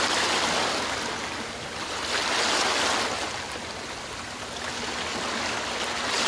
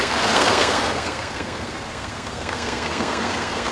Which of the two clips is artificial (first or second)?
second